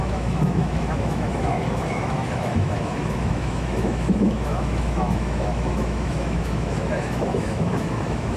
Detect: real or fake fake